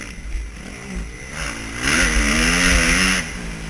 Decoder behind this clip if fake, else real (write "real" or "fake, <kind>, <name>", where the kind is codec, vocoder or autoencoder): real